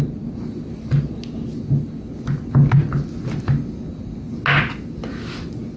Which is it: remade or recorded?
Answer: recorded